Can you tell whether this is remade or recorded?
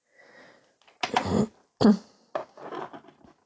recorded